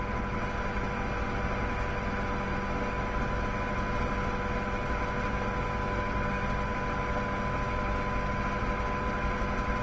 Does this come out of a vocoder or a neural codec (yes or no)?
no